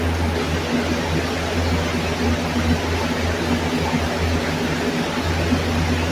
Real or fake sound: real